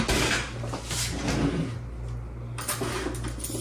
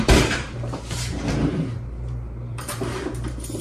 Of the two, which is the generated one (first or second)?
second